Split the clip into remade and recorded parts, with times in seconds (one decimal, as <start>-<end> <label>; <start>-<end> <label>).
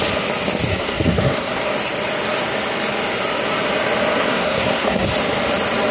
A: 0.0-0.7 recorded; 0.7-1.6 remade; 1.6-4.2 recorded; 4.2-5.1 remade; 5.1-5.9 recorded